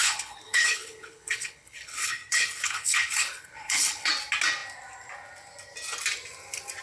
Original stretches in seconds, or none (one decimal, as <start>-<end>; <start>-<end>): 4.1-6.8